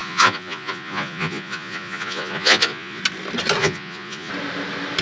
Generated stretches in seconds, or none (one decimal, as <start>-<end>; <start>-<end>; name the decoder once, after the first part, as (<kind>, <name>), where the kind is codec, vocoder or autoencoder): 0.0-3.0 (vocoder, Vocos); 3.6-4.3